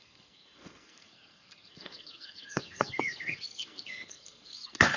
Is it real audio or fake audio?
fake